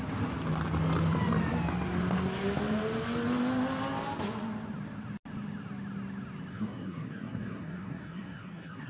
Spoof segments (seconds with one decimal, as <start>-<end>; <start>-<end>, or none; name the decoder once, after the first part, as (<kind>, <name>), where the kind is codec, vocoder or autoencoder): 6.5-8.9 (codec, SNAC)